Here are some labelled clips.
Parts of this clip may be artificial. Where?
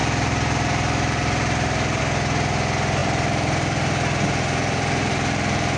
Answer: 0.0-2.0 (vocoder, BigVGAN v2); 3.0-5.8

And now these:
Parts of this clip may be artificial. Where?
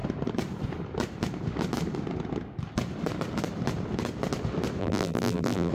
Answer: 4.8-5.7 (vocoder, BigVGAN v2)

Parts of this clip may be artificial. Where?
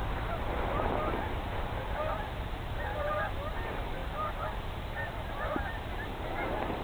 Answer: 2.8-6.8 (vocoder, BigVGAN v2)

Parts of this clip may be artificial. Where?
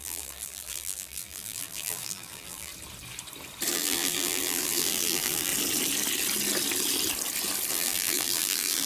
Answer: 0.0-2.7 (vocoder, BigVGAN v2); 3.7-5.5; 7.7-8.9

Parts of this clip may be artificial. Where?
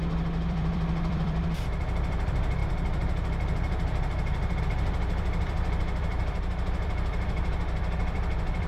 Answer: 0.0-2.6 (vocoder, BigVGAN v2); 4.6-8.7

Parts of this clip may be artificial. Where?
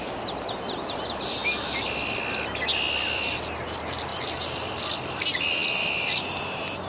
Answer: none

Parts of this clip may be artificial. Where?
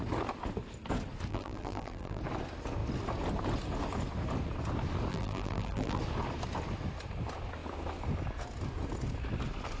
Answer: 1.3-2.2 (vocoder, BigVGAN v2); 5.1-6.0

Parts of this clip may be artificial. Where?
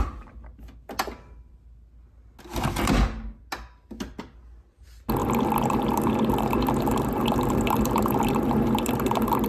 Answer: none